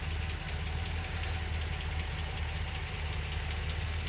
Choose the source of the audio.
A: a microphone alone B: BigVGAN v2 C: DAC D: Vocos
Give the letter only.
A